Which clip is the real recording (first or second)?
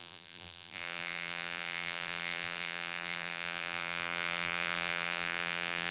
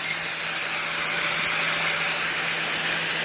second